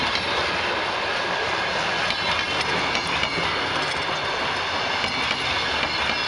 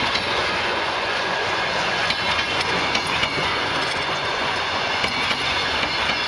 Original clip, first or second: first